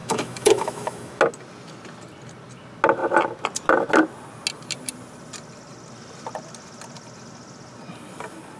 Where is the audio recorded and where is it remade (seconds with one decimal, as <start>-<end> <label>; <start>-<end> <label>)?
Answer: 0.0-1.2 remade; 1.2-8.6 recorded